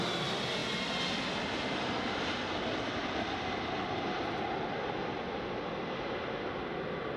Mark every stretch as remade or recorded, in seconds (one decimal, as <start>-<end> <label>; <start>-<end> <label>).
0.0-7.2 recorded